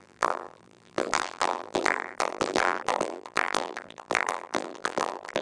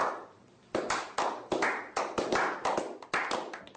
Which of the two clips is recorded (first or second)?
second